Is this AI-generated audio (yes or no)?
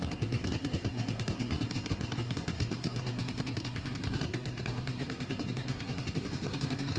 yes